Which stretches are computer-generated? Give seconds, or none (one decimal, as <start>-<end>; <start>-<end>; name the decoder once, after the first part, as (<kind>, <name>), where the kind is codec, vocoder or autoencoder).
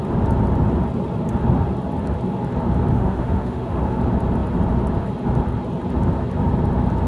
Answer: 2.9-4.0 (autoencoder, DAC-VAE)